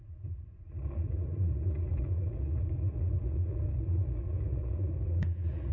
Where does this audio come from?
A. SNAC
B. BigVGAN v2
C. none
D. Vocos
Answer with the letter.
D